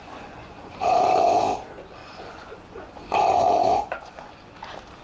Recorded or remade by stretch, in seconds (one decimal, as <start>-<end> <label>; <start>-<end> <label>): 0.0-1.4 remade; 1.4-2.0 recorded; 2.0-4.5 remade; 4.5-5.0 recorded